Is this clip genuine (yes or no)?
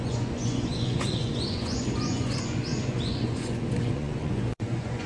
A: no